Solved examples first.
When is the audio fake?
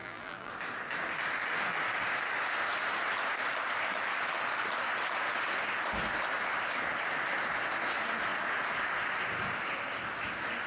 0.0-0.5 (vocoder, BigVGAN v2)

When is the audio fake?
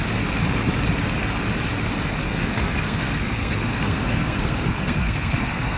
2.2-5.8 (codec, SNAC)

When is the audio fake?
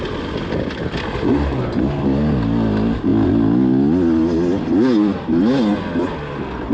none